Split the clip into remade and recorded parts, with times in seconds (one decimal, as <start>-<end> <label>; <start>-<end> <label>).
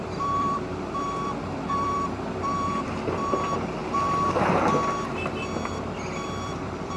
0.0-3.8 remade; 3.8-5.7 recorded; 5.7-7.0 remade